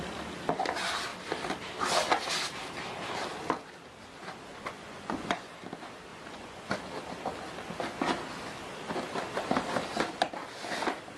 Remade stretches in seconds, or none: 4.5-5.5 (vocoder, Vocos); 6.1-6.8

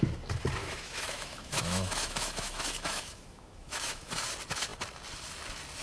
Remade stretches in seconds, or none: 0.6-4.1 (autoencoder, DAC-VAE)

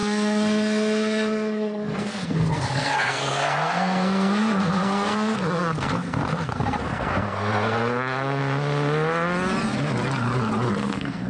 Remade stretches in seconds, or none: 0.0-8.4 (codec, SNAC); 10.8-11.3

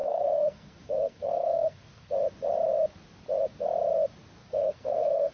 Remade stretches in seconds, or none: 0.0-2.1 (codec, SNAC); 4.4-5.3

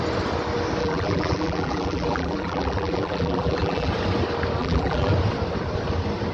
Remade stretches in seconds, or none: 0.8-3.9 (vocoder, BigVGAN v2); 4.6-5.1

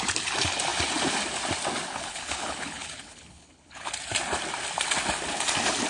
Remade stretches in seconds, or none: 1.9-3.9 (codec, HILCodec)

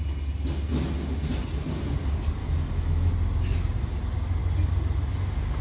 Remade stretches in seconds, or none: 2.4-3.1 (autoencoder, DAC-VAE)

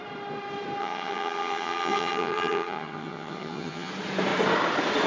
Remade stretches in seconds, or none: 0.8-3.9 (vocoder, HiFi-GAN)